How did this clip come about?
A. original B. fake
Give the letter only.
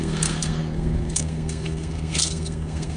B